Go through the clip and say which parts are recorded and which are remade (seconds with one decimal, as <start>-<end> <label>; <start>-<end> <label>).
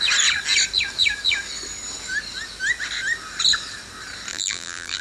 0.0-4.3 recorded; 4.3-5.0 remade